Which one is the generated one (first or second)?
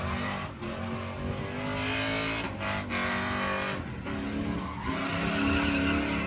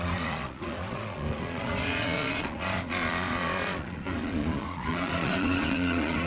second